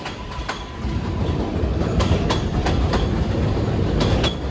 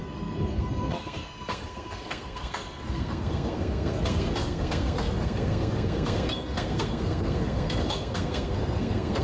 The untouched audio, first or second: first